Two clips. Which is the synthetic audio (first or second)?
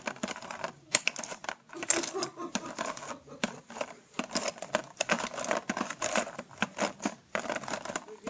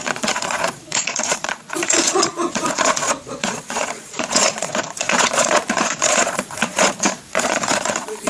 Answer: second